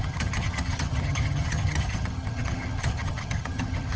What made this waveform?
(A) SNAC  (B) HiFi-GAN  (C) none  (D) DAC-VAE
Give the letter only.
B